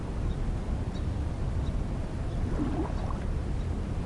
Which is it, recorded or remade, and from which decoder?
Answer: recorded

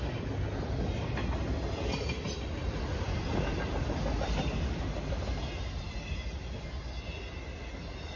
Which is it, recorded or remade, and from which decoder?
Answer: recorded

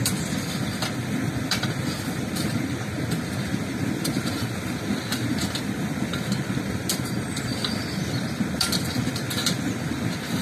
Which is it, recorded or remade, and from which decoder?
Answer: remade, vocoder, BigVGAN v2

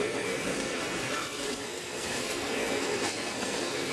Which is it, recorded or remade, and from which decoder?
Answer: remade, codec, SNAC